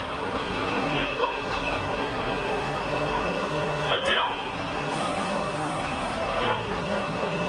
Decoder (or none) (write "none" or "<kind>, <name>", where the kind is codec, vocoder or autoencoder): codec, SNAC